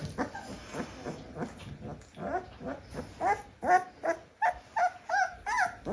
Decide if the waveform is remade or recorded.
recorded